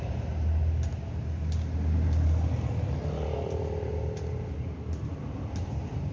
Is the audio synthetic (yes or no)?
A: no